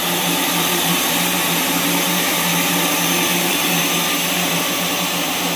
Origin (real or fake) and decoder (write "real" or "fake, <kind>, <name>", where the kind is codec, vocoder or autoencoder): fake, vocoder, BigVGAN v2